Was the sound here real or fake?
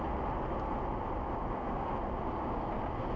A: real